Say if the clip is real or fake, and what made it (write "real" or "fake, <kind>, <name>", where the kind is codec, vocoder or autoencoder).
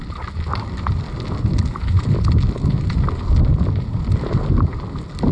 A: real